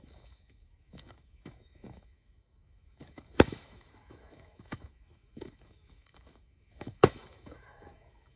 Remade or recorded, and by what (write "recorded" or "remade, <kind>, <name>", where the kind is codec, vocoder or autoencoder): remade, autoencoder, DAC-VAE